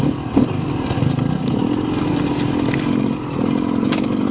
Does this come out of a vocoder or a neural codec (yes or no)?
no